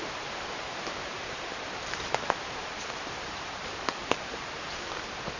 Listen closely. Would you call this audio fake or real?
fake